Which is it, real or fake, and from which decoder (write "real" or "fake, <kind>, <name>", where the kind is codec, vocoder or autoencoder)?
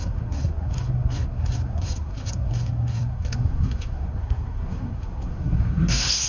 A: fake, codec, SNAC